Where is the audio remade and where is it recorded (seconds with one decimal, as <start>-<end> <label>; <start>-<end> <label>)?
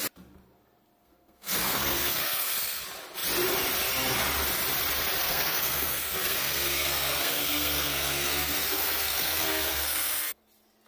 0.0-1.0 recorded; 1.0-2.8 remade; 2.8-5.2 recorded; 5.2-10.4 remade; 10.4-10.9 recorded